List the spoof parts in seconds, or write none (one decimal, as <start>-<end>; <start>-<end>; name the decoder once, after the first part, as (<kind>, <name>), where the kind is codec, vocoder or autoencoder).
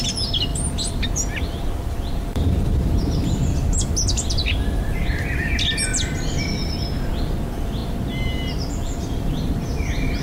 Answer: 0.5-5.5 (vocoder, BigVGAN v2)